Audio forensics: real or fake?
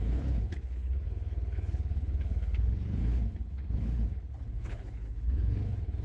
fake